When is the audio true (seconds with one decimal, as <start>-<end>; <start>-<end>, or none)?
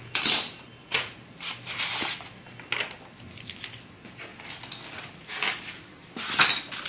0.0-0.8; 1.3-6.9